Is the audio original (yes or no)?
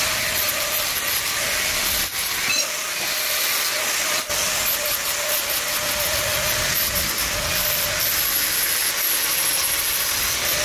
yes